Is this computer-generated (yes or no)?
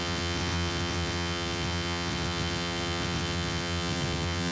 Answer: yes